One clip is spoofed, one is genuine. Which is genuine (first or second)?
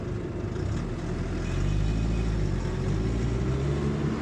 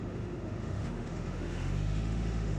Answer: first